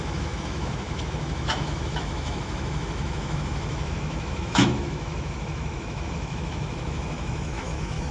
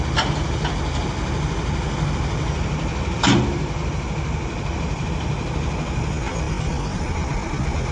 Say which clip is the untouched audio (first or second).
second